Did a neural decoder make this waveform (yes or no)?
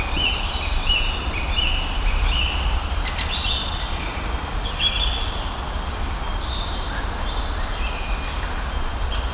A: no